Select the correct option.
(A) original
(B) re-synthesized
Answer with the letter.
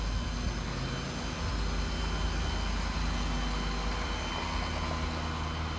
A